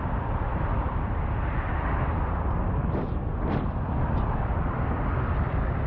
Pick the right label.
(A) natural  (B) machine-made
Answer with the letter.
B